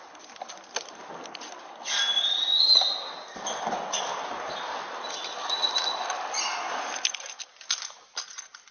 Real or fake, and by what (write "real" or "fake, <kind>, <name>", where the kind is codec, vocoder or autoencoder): real